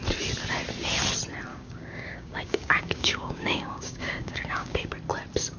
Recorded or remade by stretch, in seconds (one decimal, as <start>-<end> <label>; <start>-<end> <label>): 0.0-1.5 recorded; 1.5-4.9 remade; 4.9-5.6 recorded